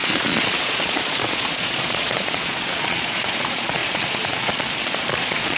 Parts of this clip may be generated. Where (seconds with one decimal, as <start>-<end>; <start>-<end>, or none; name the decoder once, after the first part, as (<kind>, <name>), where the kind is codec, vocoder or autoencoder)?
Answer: 0.0-5.6 (vocoder, Vocos)